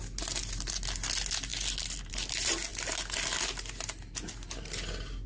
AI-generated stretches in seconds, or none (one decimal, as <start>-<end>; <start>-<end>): none